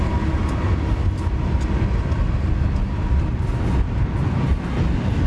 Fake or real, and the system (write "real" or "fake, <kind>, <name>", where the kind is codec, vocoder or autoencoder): real